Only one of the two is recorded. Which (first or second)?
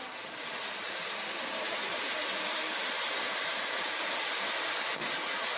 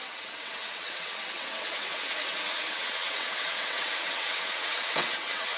first